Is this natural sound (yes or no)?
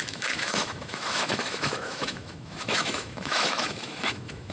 no